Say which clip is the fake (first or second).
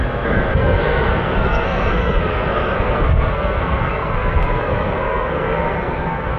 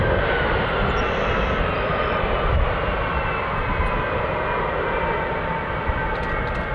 first